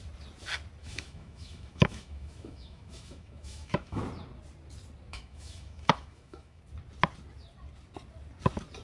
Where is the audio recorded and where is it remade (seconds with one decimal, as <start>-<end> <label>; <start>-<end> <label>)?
0.0-0.8 recorded; 0.8-4.0 remade; 4.0-5.1 recorded; 5.1-6.6 remade; 6.6-8.8 recorded